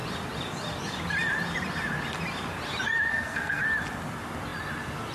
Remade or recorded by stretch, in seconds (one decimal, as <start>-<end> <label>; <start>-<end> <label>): 0.0-3.1 recorded; 3.1-3.6 remade; 3.6-5.1 recorded